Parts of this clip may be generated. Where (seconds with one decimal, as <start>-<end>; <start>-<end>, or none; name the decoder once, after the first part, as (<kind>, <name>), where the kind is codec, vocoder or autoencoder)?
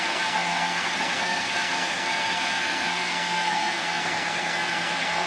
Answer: 0.0-5.3 (codec, SNAC)